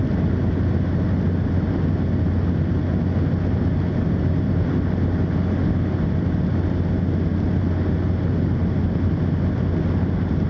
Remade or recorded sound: recorded